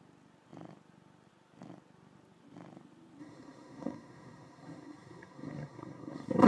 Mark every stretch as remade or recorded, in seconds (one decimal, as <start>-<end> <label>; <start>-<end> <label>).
0.0-3.2 recorded; 3.2-6.5 remade